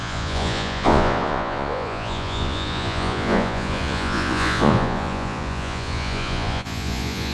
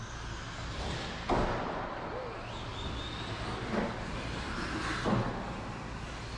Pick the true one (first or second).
second